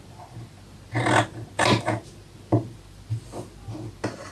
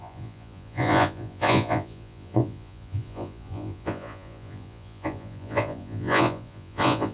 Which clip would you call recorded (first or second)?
first